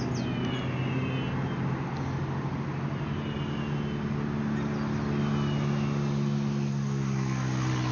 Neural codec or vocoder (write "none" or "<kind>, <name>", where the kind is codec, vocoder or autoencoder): none